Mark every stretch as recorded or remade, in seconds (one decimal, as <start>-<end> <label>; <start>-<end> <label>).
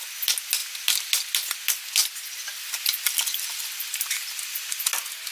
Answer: 0.0-2.0 recorded; 2.0-5.3 remade